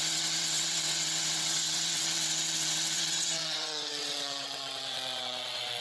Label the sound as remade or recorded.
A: remade